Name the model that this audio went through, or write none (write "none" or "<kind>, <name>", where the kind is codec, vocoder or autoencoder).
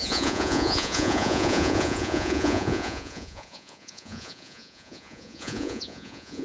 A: vocoder, Vocos